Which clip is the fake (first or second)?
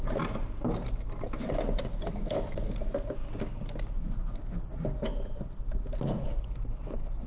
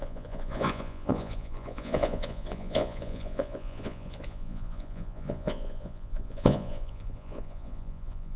second